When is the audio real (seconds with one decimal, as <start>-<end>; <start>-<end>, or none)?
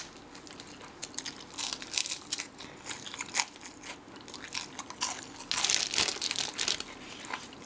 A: 0.0-7.7